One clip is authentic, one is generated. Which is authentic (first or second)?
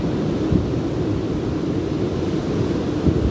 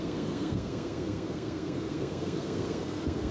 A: first